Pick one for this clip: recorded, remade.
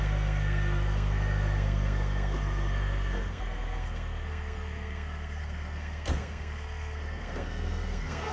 remade